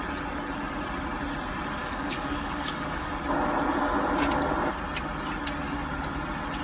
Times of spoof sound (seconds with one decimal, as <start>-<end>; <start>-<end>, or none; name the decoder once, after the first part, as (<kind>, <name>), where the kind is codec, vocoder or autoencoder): 1.8-3.1 (codec, DAC)